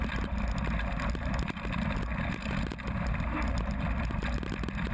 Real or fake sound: real